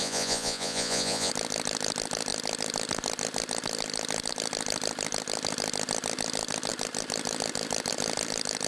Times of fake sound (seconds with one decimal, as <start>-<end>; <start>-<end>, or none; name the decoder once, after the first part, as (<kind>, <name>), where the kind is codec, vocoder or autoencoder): 0.0-1.3 (vocoder, Vocos)